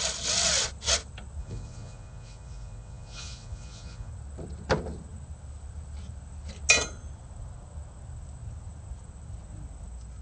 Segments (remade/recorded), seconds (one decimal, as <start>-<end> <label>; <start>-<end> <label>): 0.0-1.4 recorded; 1.4-4.1 remade; 4.1-10.2 recorded